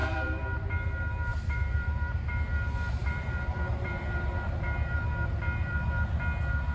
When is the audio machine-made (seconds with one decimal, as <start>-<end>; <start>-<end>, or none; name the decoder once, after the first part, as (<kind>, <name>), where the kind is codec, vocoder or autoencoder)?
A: 0.0-0.7 (vocoder, BigVGAN v2); 1.3-2.3; 3.0-6.1